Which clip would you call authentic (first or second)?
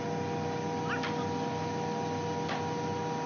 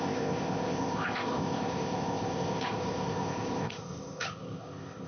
first